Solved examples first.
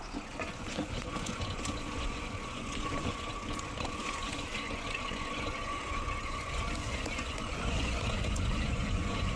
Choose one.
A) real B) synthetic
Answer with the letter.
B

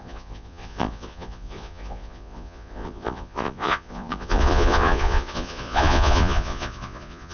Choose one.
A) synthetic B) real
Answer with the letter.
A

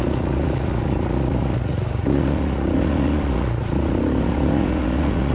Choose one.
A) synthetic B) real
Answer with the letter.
A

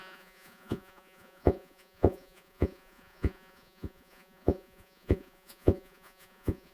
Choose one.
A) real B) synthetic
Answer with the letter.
B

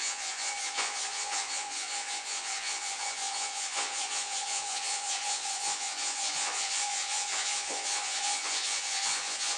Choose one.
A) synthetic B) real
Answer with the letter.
A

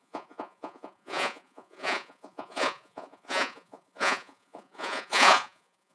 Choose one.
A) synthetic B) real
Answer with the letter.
A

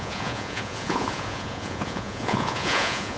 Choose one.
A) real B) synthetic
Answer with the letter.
B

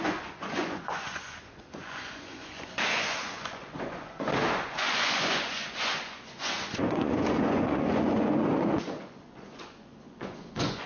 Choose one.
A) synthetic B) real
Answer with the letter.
A